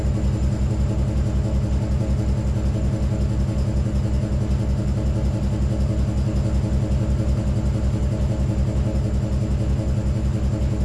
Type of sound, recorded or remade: recorded